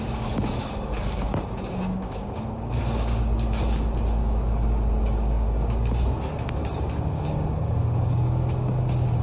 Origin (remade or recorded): remade